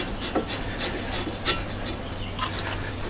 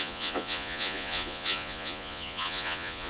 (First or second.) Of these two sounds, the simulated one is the second